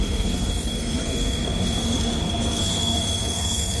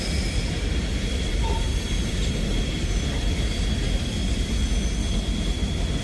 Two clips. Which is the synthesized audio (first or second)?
first